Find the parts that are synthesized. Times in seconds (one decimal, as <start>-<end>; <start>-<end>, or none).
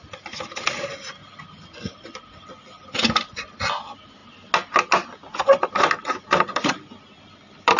0.0-4.2; 6.2-7.8